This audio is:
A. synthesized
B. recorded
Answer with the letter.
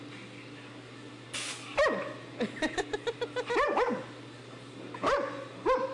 B